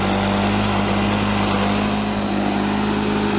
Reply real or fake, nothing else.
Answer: real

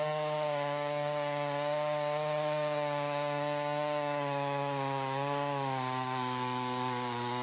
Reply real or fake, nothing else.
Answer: fake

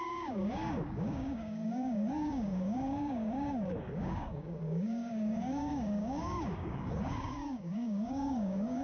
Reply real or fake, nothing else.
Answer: fake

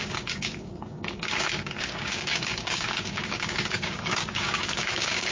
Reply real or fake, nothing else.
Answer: fake